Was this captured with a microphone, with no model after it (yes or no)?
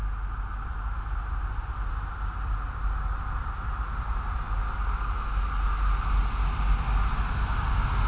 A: yes